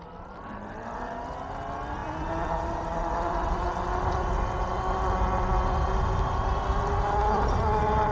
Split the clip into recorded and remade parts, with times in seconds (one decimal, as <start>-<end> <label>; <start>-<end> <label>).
0.0-8.1 recorded